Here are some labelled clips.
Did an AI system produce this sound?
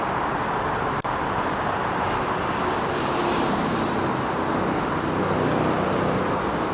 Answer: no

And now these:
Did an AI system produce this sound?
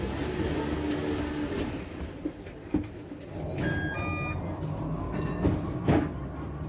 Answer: no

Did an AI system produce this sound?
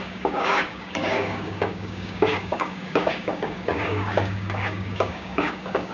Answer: yes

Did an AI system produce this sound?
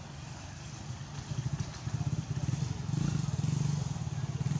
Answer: no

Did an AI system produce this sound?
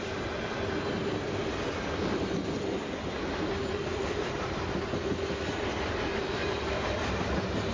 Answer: no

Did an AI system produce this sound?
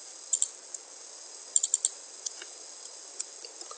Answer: no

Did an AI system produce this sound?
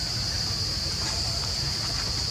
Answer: no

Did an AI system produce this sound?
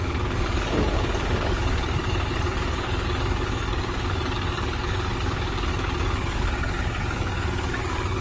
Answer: yes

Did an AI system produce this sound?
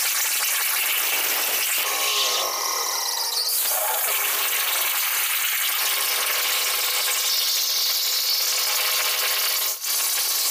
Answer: no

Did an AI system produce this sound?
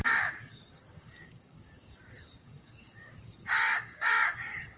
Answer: yes